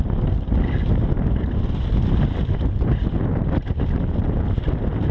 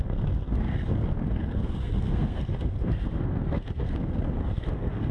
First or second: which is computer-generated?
second